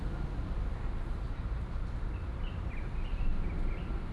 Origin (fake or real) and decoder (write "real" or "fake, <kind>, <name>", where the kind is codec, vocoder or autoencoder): real